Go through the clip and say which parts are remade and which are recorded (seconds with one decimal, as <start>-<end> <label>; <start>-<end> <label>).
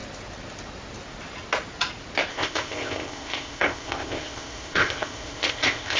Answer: 0.0-2.3 recorded; 2.3-6.0 remade